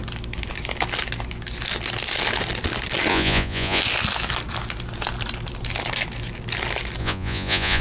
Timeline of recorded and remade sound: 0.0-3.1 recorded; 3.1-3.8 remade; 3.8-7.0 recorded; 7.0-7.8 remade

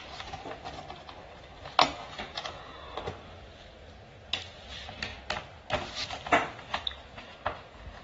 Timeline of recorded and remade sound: 0.0-2.0 recorded; 2.0-2.7 remade; 2.7-8.0 recorded

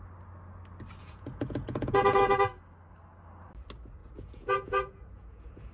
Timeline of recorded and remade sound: 0.0-1.0 recorded; 1.0-2.3 remade; 2.3-4.0 recorded; 4.0-5.7 remade